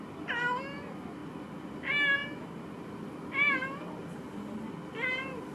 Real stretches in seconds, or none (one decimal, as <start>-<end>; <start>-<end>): 0.0-5.5

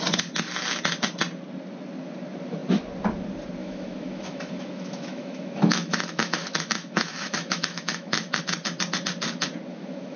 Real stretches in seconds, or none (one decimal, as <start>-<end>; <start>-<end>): 0.0-3.6; 8.4-9.7

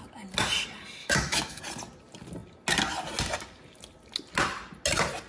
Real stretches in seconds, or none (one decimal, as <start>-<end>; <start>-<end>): 0.0-1.0; 1.6-5.3

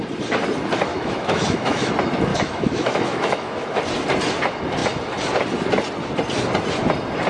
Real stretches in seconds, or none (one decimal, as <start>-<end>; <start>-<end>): 0.0-0.9; 1.9-2.3; 3.8-7.3

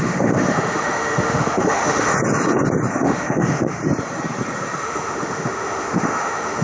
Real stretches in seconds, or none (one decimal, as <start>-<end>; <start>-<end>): 2.1-2.9; 3.8-4.8

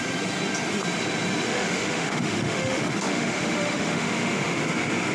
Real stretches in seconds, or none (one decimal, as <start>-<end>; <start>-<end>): 0.0-1.5; 4.6-5.1